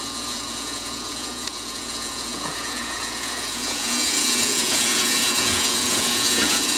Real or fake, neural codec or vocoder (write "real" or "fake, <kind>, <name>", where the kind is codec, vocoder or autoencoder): fake, vocoder, Vocos